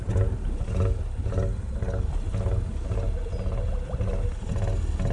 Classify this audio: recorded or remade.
recorded